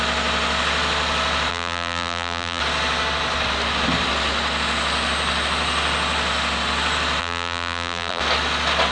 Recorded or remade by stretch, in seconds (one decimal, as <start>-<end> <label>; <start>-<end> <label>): 0.0-1.5 recorded; 1.5-2.6 remade; 2.6-7.2 recorded; 7.2-8.2 remade; 8.2-8.9 recorded